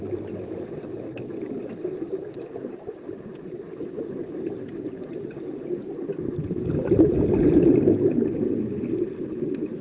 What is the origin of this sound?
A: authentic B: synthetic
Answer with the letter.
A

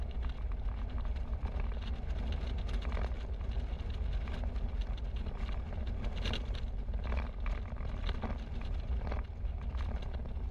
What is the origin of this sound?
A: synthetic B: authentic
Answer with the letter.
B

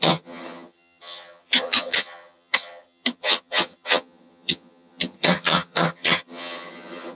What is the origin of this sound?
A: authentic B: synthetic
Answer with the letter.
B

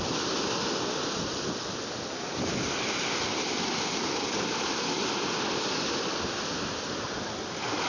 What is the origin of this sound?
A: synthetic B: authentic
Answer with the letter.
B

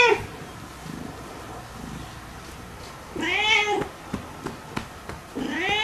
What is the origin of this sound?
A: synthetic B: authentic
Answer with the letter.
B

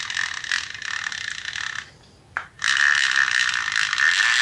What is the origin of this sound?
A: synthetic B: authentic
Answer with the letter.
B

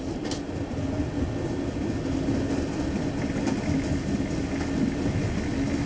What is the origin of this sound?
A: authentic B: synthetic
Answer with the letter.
A